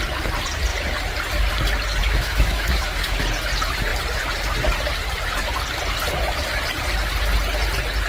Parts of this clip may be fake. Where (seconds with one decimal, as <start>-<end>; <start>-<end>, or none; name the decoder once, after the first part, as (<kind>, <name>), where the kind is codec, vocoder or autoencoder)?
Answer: 2.0-3.2 (autoencoder, DAC-VAE)